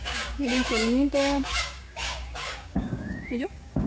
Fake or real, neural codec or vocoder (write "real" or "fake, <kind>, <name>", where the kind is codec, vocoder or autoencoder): fake, codec, DAC